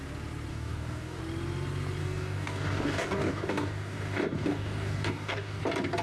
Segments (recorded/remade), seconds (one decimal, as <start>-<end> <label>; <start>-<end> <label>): 0.0-0.5 recorded; 0.5-1.2 remade; 1.2-2.0 recorded; 2.0-5.6 remade; 5.6-6.0 recorded